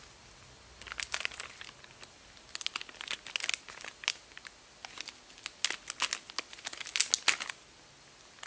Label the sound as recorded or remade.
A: recorded